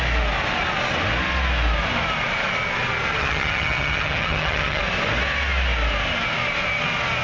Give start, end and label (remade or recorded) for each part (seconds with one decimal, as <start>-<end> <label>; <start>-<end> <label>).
0.0-3.2 recorded; 3.2-4.8 remade; 4.8-7.2 recorded